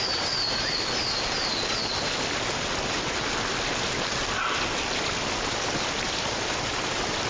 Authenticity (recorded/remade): recorded